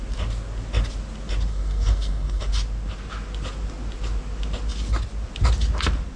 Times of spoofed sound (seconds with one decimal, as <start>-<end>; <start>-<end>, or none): 1.5-2.5